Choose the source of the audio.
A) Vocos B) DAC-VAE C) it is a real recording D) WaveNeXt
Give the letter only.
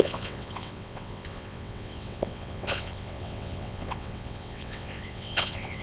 D